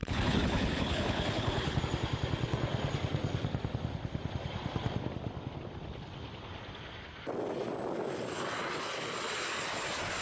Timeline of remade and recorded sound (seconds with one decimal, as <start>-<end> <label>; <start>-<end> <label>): 0.0-1.8 remade; 1.8-10.2 recorded